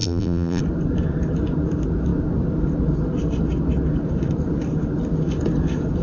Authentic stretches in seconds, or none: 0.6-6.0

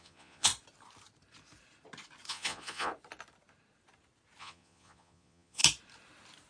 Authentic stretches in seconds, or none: 0.5-2.3; 2.9-4.4; 5.6-6.5

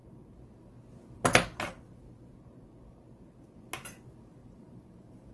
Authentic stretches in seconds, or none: 0.0-4.4

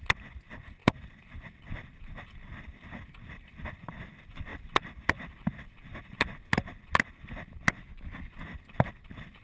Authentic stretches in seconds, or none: 0.0-7.8; 8.3-9.4

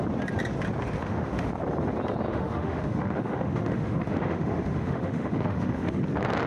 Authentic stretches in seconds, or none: 0.0-1.0; 1.5-2.3; 6.0-6.5

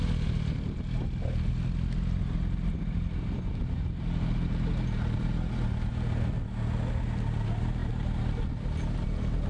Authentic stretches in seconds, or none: 0.0-9.5

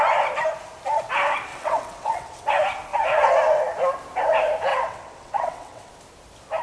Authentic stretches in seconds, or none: 0.0-1.5; 2.5-4.7; 5.9-6.6